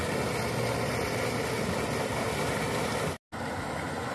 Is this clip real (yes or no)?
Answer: yes